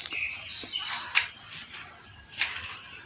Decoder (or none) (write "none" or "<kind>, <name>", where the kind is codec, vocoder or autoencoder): vocoder, BigVGAN v2